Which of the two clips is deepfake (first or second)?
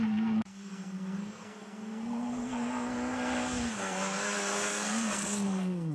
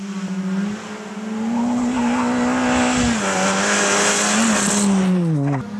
first